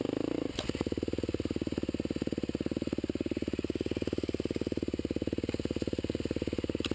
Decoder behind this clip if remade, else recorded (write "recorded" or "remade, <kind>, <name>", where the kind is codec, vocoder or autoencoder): recorded